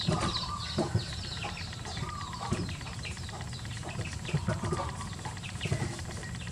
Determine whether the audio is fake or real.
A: real